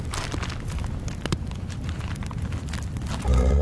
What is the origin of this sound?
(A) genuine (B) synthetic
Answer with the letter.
A